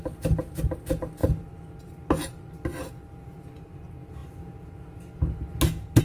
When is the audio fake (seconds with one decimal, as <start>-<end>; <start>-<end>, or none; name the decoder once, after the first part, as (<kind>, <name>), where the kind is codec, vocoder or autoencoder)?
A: none